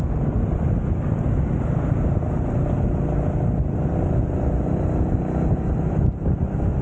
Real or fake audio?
real